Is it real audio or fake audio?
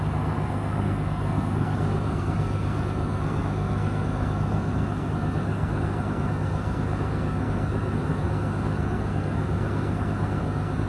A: fake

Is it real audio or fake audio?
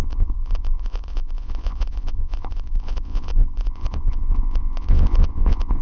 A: fake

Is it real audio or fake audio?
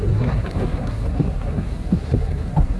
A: fake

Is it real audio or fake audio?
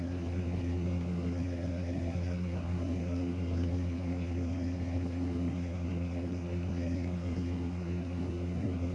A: fake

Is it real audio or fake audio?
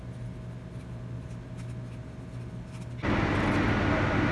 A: real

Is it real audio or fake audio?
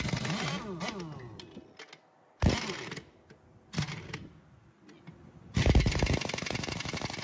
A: real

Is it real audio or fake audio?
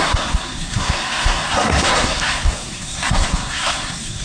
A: fake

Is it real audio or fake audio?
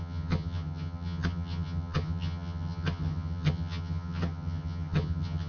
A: fake